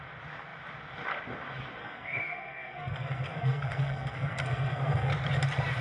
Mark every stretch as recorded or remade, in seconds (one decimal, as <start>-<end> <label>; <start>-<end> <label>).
0.0-1.8 recorded; 1.8-5.1 remade; 5.1-5.8 recorded